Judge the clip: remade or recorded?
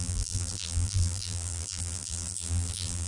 remade